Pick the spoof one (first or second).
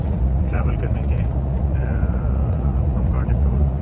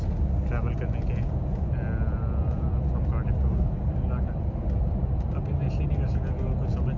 first